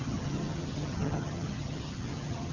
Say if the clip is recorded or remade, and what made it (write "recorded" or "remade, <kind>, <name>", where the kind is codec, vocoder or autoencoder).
remade, vocoder, HiFi-GAN